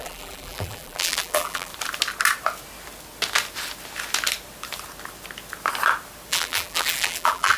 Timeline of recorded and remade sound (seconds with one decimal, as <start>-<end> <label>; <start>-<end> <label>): 0.0-1.7 remade; 1.7-6.3 recorded; 6.3-7.6 remade